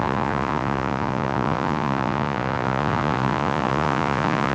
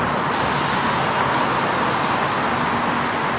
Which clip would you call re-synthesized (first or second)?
first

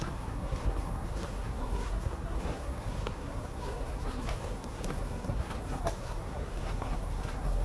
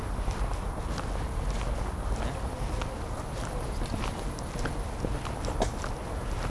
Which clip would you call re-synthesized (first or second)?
first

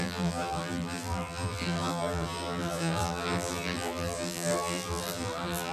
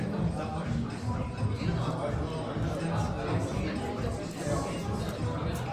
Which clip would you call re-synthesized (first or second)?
first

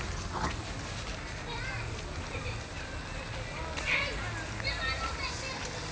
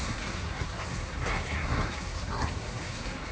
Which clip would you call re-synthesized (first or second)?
second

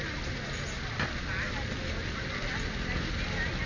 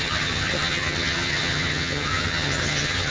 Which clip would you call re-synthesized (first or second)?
second